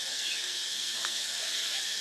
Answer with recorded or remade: remade